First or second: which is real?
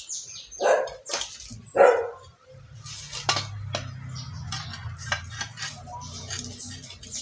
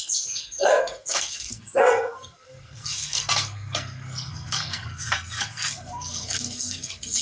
first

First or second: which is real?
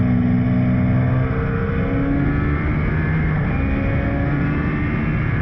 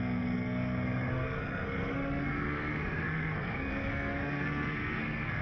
first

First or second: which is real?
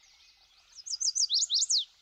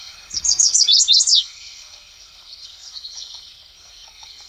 first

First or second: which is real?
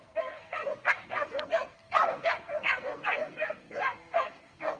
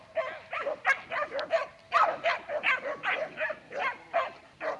second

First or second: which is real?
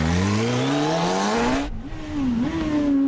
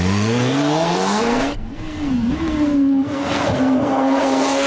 first